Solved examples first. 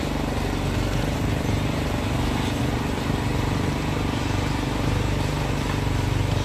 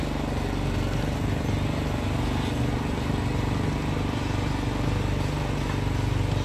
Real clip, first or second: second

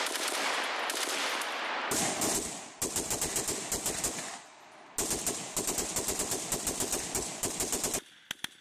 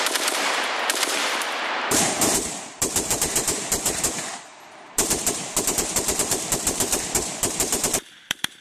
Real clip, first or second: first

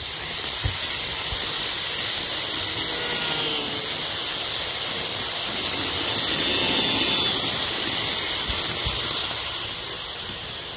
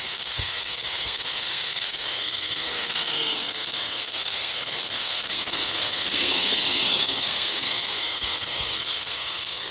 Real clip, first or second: first